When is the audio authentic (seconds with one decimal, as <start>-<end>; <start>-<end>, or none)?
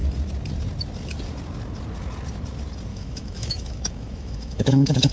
0.0-2.9